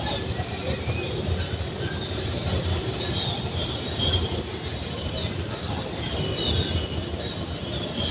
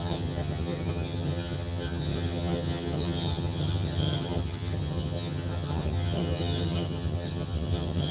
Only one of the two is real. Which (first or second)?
first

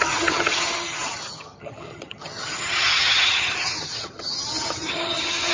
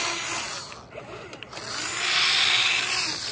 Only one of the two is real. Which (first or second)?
second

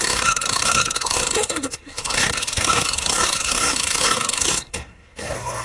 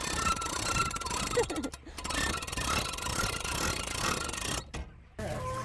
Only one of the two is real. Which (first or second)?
second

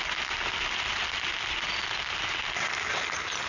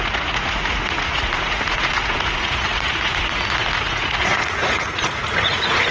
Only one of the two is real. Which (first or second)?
first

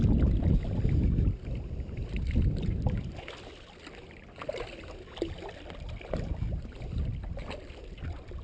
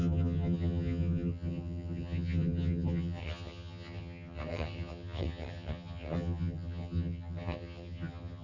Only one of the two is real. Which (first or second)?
first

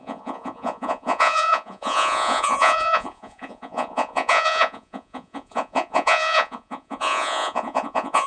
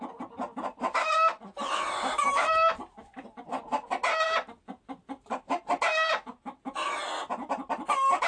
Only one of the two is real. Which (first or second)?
second